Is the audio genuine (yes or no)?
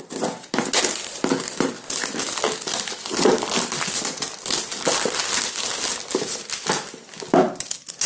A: yes